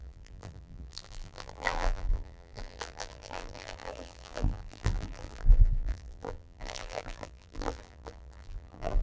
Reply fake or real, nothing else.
fake